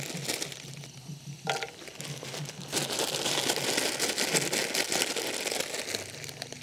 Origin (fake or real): real